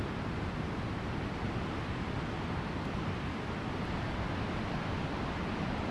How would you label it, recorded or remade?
recorded